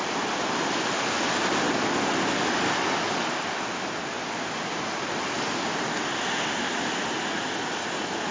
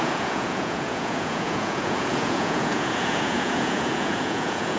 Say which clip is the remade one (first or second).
second